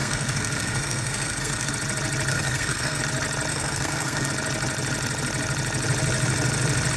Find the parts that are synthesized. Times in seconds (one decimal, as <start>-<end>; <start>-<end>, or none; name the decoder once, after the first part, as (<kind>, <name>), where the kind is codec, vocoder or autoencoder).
0.0-1.7 (codec, SNAC); 2.3-3.0; 3.5-4.3